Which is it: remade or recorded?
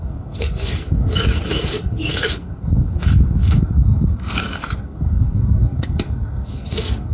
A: remade